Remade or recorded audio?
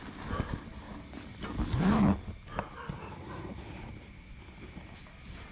recorded